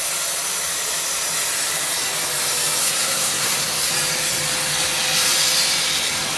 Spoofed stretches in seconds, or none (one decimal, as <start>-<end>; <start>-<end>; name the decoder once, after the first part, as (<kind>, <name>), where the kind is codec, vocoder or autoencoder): 2.8-3.9 (codec, SNAC)